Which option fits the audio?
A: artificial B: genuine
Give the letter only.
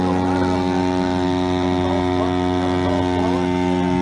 B